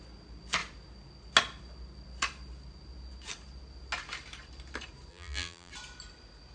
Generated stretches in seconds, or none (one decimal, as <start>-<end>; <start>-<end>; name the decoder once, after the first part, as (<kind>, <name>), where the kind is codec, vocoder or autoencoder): 5.1-5.7 (vocoder, BigVGAN v2)